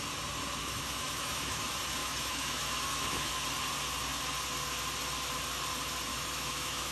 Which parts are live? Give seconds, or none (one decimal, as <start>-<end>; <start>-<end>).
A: 0.0-0.6; 1.6-2.0; 3.3-6.1